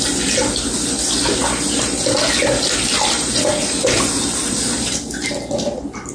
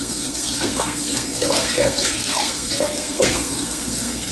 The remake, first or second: second